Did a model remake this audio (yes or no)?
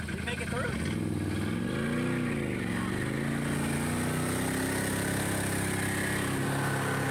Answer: no